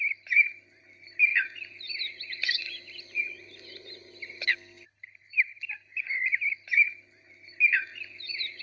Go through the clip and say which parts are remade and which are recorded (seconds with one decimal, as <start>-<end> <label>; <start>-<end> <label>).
0.0-8.6 recorded